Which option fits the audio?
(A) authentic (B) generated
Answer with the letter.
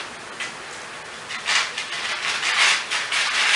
A